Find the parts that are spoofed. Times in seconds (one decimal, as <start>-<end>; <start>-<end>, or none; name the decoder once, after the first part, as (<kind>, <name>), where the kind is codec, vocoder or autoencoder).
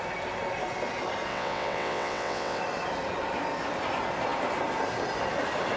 1.3-2.6 (vocoder, WaveNeXt)